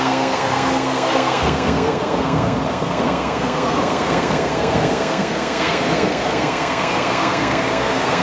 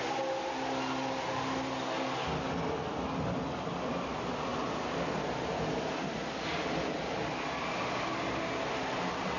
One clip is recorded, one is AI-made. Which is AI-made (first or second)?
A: first